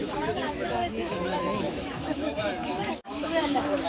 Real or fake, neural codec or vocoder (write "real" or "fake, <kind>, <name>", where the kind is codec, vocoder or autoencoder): fake, autoencoder, DAC-VAE